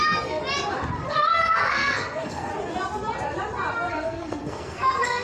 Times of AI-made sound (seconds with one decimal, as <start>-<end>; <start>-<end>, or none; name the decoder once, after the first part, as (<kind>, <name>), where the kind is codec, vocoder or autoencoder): 0.0-0.4 (codec, SNAC); 1.1-2.5; 3.9-5.2